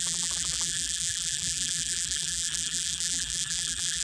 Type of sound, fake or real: fake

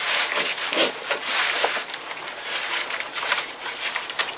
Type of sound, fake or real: fake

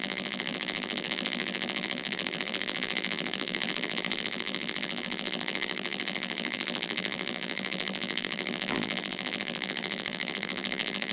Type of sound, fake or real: fake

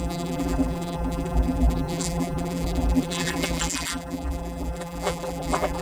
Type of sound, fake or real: fake